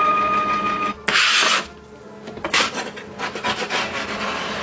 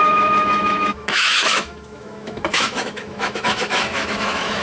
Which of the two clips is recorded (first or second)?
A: first